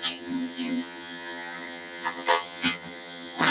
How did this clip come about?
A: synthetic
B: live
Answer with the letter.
A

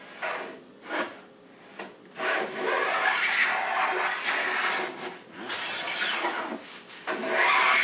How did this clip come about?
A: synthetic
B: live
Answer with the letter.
B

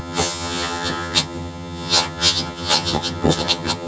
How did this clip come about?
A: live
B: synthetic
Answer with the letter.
B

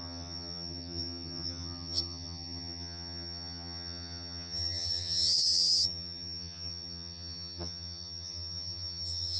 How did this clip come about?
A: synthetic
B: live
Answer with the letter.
A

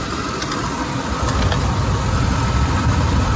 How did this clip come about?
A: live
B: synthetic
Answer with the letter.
A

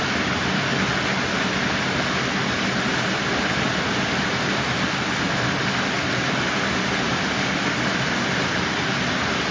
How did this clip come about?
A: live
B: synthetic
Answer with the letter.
A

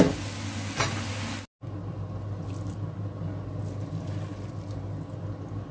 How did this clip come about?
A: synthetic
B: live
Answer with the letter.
B